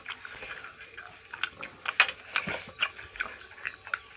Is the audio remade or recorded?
recorded